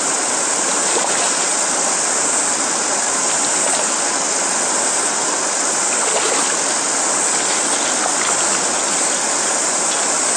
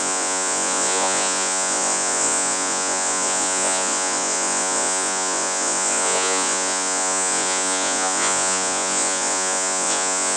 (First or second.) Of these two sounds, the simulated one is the second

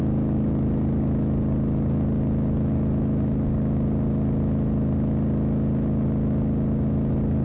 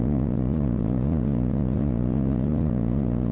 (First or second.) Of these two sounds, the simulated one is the second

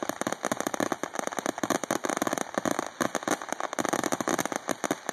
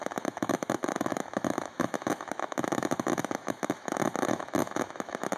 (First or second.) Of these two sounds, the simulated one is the second